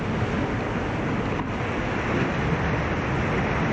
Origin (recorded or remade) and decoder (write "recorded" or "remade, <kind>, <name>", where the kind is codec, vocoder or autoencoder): recorded